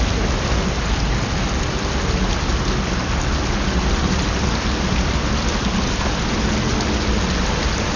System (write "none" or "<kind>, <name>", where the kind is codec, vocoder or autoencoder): none